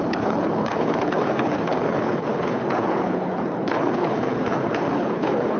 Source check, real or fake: fake